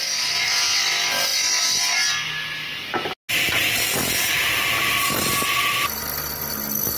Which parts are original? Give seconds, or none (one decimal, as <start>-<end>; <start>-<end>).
0.0-7.0